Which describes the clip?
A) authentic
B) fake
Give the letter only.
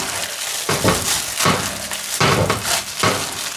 A